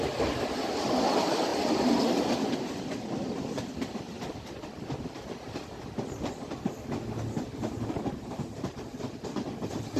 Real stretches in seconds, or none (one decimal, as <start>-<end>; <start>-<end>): 0.0-10.0